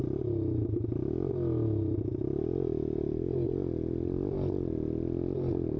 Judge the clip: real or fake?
real